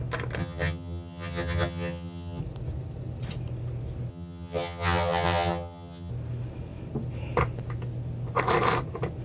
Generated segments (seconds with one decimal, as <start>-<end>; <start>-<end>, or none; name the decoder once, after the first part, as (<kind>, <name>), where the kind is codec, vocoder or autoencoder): 0.4-2.4 (vocoder, HiFi-GAN); 4.1-6.1